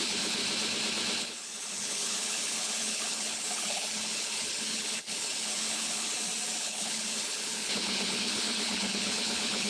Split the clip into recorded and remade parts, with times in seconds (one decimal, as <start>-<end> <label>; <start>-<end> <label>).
0.0-0.4 remade; 0.4-1.2 recorded; 1.2-6.1 remade; 6.1-6.6 recorded; 6.6-9.7 remade